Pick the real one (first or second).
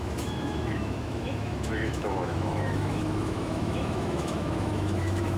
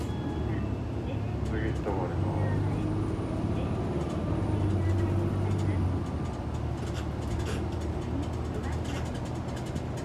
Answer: second